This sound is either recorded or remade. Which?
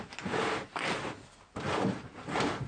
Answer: recorded